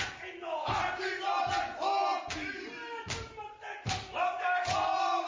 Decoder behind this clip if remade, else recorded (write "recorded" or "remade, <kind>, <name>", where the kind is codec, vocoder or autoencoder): recorded